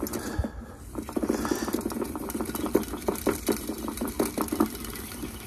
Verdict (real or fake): real